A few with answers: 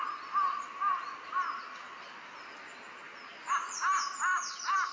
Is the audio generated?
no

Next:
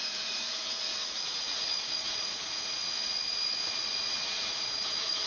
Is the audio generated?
yes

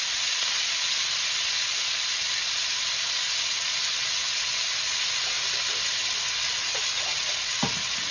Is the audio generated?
no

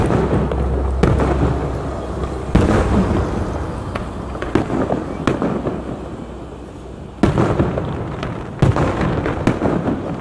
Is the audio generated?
no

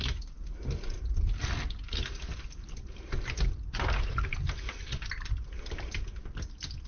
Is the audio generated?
no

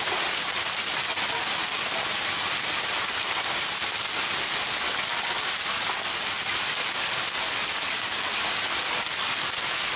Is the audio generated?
no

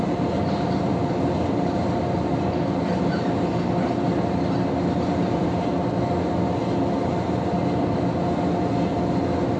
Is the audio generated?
no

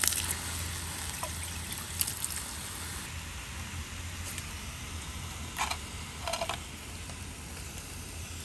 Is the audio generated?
no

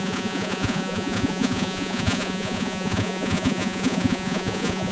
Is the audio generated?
yes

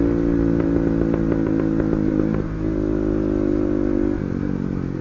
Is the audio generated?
no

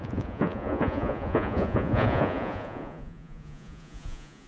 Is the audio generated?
yes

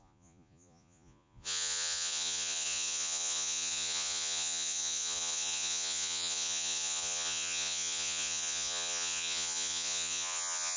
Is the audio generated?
yes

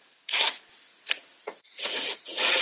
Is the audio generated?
yes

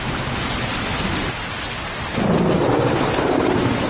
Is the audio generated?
no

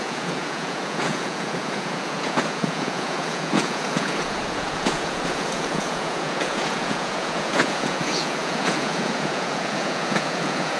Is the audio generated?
yes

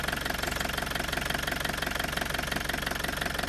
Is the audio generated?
no